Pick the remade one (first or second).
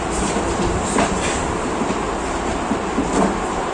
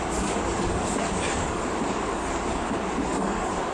second